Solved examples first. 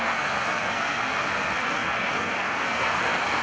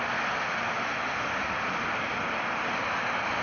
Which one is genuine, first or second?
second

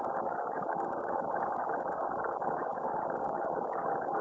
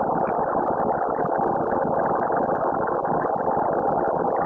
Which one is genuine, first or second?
second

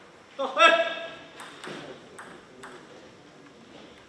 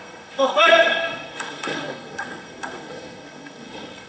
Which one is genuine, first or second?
first